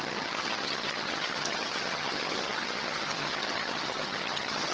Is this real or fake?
fake